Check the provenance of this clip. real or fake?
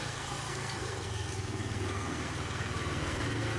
fake